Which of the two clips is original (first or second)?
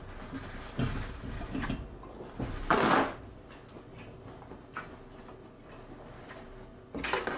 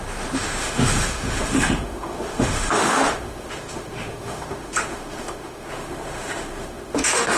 first